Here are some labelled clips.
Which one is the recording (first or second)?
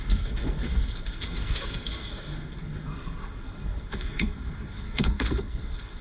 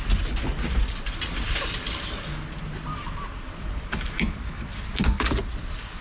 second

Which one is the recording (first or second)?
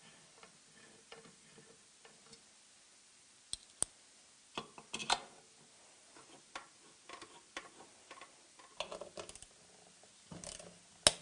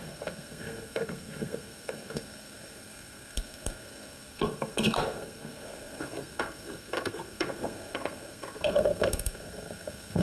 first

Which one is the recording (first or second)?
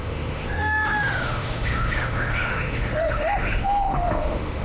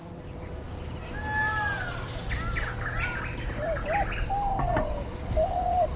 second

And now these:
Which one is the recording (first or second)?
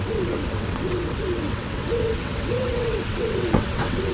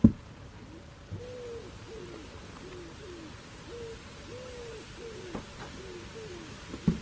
second